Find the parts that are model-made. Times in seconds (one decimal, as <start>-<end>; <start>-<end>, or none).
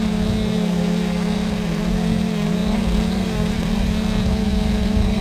0.0-5.2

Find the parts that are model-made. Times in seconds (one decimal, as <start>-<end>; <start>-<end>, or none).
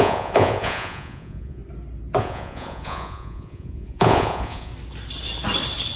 0.0-1.6; 2.2-4.7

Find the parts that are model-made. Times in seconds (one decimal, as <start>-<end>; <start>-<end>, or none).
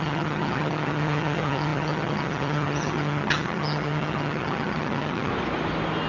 0.0-5.3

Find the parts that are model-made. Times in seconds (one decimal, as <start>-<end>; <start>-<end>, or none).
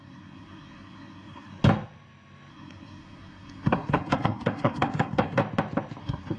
0.0-1.6; 2.5-5.4; 6.0-6.4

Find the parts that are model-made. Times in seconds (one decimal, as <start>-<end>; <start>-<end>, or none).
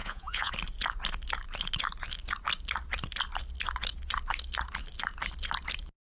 0.0-0.5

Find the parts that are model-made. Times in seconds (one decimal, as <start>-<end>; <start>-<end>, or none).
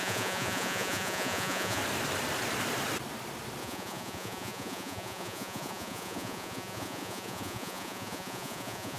0.0-1.8; 3.6-9.0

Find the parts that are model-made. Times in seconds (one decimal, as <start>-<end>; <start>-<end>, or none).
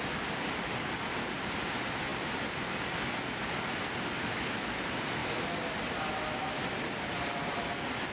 none